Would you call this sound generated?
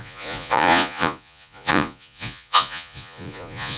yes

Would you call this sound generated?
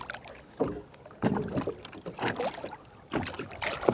no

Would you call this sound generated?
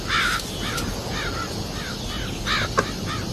no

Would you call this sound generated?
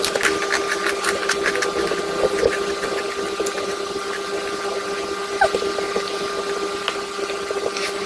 no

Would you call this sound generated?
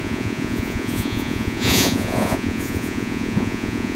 yes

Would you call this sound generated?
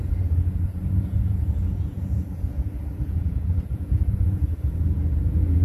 yes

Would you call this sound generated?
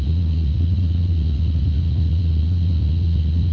yes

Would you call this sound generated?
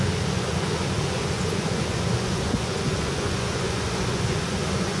yes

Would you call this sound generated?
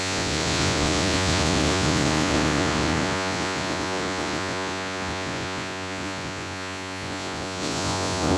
yes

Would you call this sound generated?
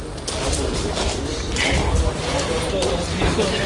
no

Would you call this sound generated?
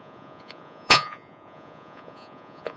yes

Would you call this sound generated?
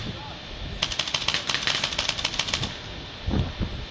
no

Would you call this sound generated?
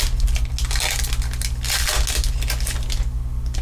no